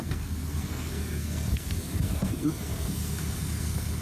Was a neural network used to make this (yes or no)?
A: yes